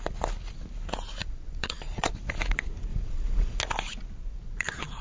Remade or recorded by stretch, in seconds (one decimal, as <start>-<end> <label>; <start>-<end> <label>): 0.0-1.2 recorded; 1.2-2.1 remade; 2.1-2.9 recorded; 2.9-3.6 remade; 3.6-4.3 recorded; 4.3-5.0 remade